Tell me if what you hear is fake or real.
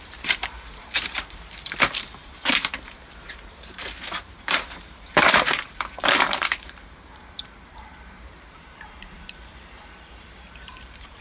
fake